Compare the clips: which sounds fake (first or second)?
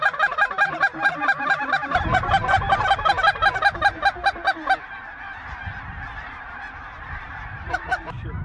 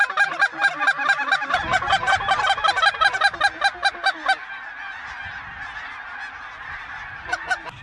first